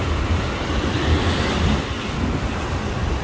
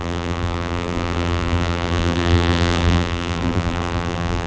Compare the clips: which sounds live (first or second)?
first